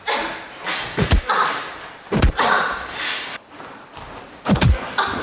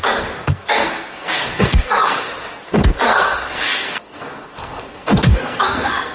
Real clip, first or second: first